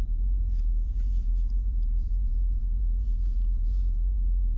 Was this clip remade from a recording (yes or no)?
yes